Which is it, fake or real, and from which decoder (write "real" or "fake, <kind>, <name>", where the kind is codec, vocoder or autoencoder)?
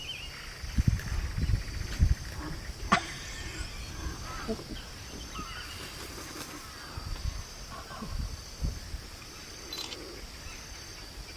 real